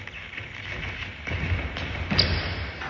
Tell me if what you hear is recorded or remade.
recorded